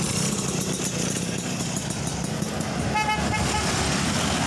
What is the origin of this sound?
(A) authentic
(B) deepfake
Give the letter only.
A